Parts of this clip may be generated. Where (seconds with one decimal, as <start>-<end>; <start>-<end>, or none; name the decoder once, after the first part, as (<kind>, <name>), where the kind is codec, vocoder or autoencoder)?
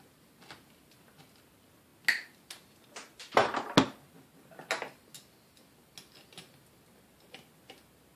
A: none